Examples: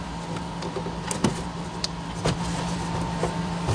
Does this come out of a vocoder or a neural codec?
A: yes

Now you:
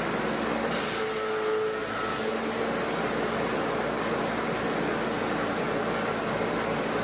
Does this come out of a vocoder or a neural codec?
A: no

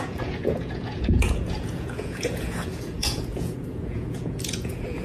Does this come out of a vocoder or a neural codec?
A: yes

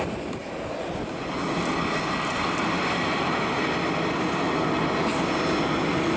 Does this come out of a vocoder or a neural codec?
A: no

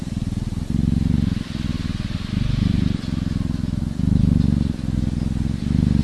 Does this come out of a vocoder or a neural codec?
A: no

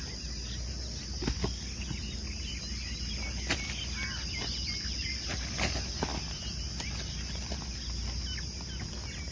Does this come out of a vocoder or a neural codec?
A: no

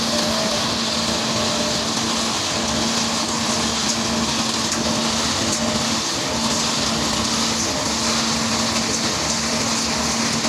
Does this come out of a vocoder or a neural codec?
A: no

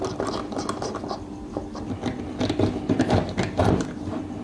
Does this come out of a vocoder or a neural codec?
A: no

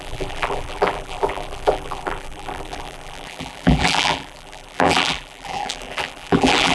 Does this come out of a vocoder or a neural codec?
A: yes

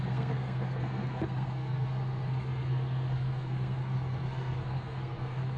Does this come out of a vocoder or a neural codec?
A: yes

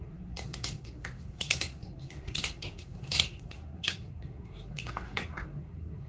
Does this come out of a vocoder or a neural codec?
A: yes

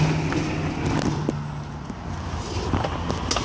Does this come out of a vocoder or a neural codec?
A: no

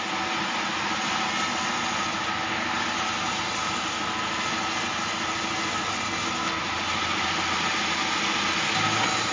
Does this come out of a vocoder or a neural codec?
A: no